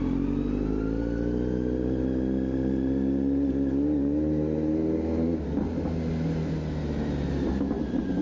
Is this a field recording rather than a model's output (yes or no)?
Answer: yes